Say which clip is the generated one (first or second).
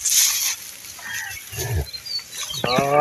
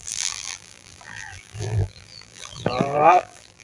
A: second